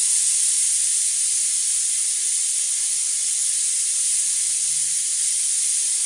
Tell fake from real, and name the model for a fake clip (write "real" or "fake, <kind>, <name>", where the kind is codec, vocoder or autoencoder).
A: real